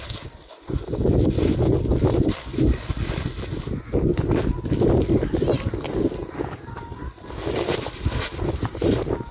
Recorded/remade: recorded